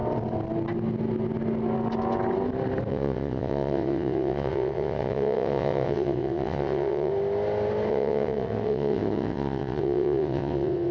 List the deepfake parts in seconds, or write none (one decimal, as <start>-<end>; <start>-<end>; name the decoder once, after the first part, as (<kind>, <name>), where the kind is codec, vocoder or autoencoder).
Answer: 2.9-7.1 (vocoder, WaveNeXt); 7.9-10.9